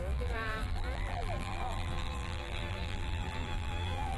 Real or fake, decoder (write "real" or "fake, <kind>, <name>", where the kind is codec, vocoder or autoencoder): fake, vocoder, BigVGAN v2